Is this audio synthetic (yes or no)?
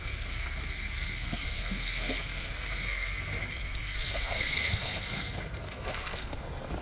yes